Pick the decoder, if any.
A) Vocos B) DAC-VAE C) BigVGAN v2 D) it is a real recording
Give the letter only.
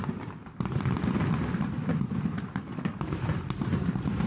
C